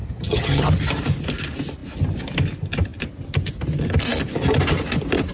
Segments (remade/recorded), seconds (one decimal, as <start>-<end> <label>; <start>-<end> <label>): 0.0-0.7 remade; 0.7-5.3 recorded